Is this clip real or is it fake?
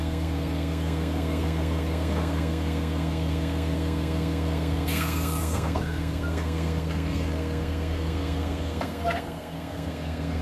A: fake